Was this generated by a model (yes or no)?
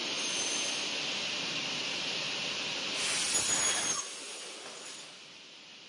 no